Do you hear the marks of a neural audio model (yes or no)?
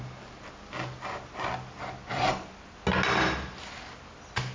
no